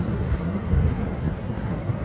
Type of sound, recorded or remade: remade